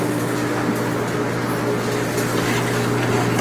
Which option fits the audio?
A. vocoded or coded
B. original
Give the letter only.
B